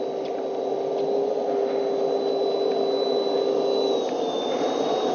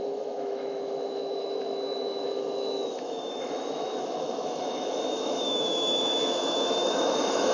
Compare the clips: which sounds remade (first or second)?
second